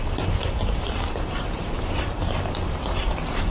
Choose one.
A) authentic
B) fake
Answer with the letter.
B